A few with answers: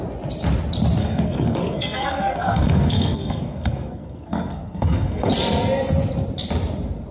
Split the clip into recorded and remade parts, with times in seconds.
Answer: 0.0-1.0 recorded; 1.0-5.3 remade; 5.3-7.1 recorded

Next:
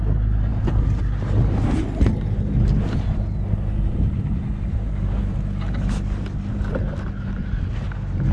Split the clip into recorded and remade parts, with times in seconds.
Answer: 0.0-8.3 recorded

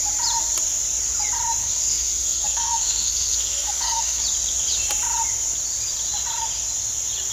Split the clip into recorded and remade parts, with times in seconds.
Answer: 0.0-1.6 recorded; 1.6-4.2 remade; 4.2-7.3 recorded

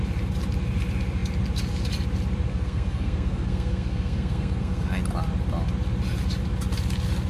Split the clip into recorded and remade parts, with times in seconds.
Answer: 0.0-2.5 recorded; 2.5-5.0 remade; 5.0-7.3 recorded

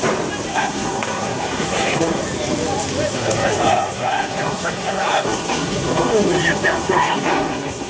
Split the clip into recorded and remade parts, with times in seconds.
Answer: 0.0-0.5 recorded; 0.5-2.2 remade; 2.2-3.1 recorded; 3.1-7.9 remade

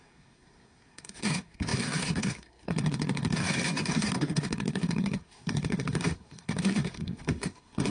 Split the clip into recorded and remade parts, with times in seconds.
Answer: 0.0-7.9 remade

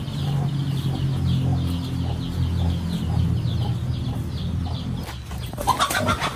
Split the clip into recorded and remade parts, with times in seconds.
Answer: 0.0-6.4 recorded